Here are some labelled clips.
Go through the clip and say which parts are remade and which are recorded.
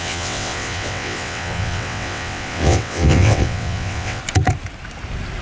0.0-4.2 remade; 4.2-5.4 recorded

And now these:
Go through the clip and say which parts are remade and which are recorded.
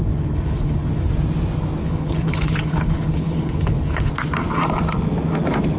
0.0-1.1 remade; 1.1-1.8 recorded; 1.8-4.1 remade; 4.1-5.8 recorded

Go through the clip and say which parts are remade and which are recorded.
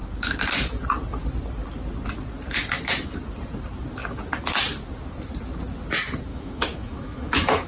0.0-6.3 recorded; 6.3-7.7 remade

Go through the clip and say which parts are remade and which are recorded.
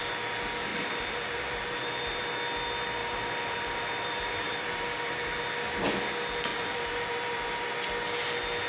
0.0-0.7 recorded; 0.7-2.2 remade; 2.2-3.0 recorded; 3.0-5.4 remade; 5.4-6.5 recorded; 6.5-7.7 remade; 7.7-8.7 recorded